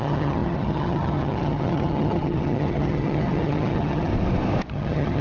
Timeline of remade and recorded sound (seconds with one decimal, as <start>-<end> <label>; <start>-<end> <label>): 0.0-4.1 remade; 4.1-4.7 recorded; 4.7-5.2 remade